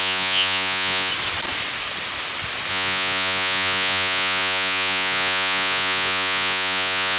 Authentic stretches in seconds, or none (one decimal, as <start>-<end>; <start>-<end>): 1.1-2.7